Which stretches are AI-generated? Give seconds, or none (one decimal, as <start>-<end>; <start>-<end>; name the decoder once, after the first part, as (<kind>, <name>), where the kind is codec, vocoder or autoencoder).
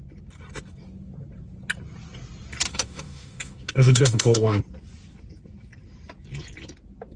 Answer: 2.7-4.6 (autoencoder, DAC-VAE)